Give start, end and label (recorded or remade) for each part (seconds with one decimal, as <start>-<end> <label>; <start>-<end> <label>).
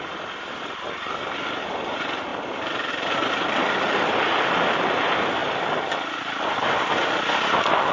0.0-7.9 recorded